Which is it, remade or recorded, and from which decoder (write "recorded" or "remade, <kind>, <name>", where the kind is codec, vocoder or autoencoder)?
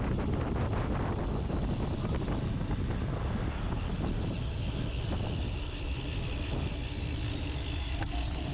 recorded